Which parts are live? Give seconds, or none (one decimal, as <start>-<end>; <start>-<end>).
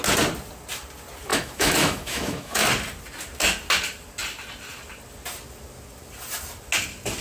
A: 0.0-1.3; 2.7-7.2